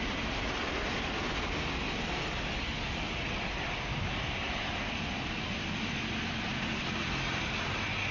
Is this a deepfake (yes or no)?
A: no